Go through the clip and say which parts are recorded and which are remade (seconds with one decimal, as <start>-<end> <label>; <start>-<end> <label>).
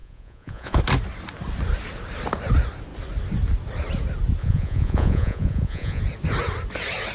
0.0-0.8 remade; 0.8-4.4 recorded; 4.4-6.0 remade; 6.0-7.1 recorded